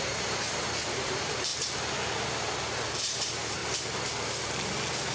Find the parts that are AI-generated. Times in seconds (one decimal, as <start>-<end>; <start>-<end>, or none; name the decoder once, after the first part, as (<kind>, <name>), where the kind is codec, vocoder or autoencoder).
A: 0.0-1.5 (vocoder, BigVGAN v2); 3.0-3.6